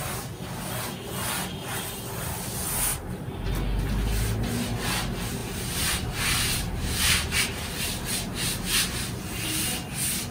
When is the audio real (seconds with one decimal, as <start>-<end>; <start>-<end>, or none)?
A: 0.0-2.9; 3.5-5.4; 7.8-10.3